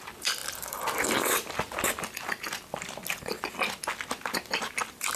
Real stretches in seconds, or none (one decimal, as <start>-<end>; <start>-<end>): 3.0-4.6

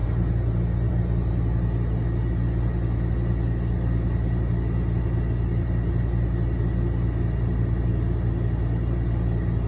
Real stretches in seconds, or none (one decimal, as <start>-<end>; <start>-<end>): 0.0-9.7

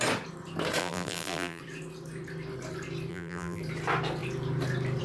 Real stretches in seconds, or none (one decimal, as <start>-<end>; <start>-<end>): 0.0-0.8; 1.6-3.1; 3.6-5.0

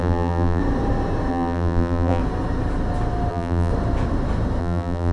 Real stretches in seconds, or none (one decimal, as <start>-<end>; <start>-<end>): 0.6-1.3; 2.2-3.3; 3.7-4.6

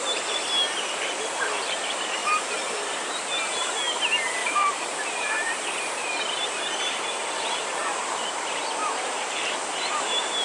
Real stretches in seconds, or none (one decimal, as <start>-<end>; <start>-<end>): 0.0-2.2; 3.2-4.4; 6.2-7.8; 8.4-8.8; 9.5-10.4

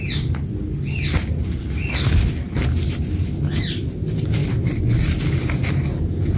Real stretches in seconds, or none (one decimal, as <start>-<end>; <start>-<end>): 0.0-1.4; 2.5-4.4; 5.0-6.4

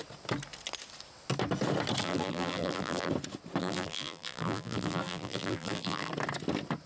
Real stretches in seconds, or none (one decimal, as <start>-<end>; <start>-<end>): 0.0-2.0; 3.1-3.6; 6.1-6.9

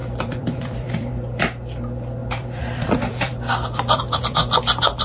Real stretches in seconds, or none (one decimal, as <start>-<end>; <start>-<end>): 1.1-2.2; 4.6-5.0